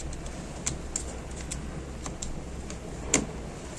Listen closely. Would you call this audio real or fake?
real